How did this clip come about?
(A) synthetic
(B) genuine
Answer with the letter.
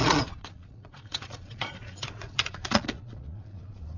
A